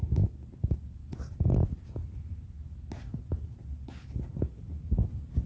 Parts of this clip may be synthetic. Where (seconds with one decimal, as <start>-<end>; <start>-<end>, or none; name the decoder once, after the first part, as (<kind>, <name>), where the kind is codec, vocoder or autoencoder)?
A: none